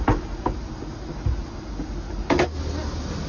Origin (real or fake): real